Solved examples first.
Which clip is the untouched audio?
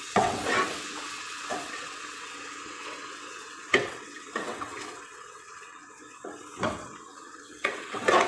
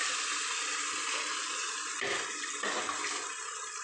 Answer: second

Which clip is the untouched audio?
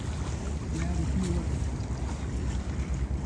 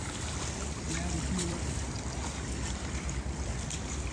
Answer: first